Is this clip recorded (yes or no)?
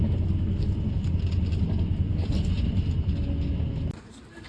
yes